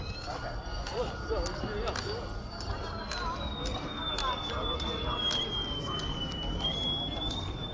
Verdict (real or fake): real